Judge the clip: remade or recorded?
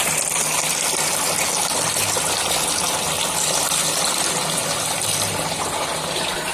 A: recorded